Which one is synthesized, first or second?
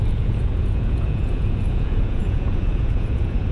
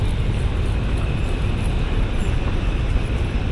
first